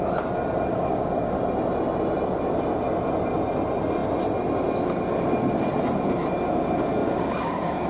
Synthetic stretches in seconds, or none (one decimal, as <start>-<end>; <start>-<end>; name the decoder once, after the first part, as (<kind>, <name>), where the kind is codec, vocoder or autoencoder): 0.7-1.4 (codec, DAC); 7.0-7.9